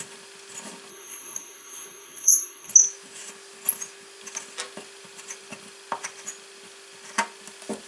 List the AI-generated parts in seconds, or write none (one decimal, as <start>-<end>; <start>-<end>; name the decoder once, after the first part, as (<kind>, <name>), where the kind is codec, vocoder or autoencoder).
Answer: 0.9-2.7 (codec, SNAC)